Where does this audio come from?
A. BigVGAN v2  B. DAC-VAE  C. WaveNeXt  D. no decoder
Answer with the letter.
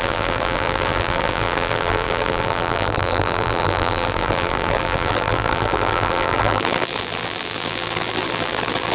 A